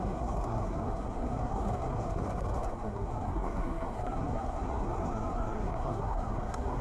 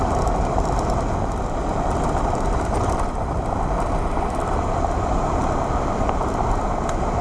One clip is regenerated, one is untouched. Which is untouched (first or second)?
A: second